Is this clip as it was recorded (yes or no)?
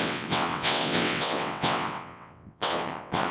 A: no